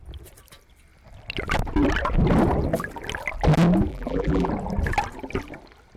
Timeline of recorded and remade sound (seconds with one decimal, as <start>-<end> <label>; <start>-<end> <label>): 0.0-3.9 recorded; 3.9-4.5 remade; 4.5-6.0 recorded